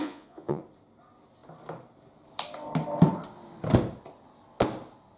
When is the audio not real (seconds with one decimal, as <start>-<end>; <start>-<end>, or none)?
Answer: 0.0-0.6